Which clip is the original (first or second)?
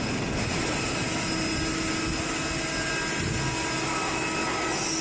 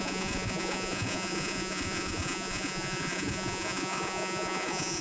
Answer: first